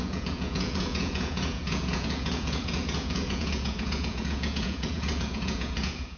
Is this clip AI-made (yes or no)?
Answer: yes